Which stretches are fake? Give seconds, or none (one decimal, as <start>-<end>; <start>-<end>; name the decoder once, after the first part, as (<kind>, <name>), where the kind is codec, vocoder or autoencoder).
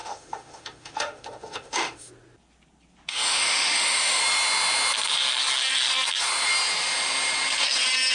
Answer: 0.0-2.1 (autoencoder, DAC-VAE); 3.1-4.2